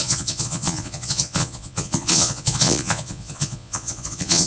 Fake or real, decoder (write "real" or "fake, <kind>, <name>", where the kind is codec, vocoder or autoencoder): fake, vocoder, Vocos